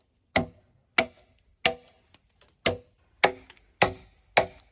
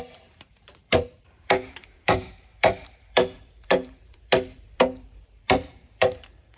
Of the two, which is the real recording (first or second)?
first